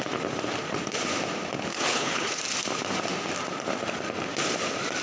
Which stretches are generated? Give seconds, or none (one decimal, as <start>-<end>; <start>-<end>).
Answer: 1.7-2.4